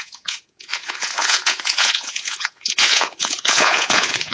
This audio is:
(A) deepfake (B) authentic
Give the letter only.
A